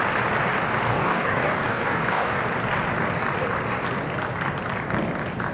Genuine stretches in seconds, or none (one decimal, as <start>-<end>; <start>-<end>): 0.0-0.9; 2.4-5.5